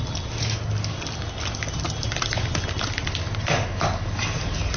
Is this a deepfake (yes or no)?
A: no